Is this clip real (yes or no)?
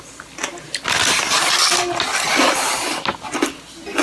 yes